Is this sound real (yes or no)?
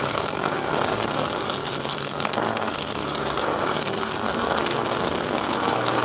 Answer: no